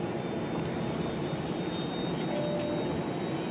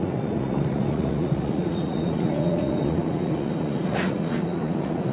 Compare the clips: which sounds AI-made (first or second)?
second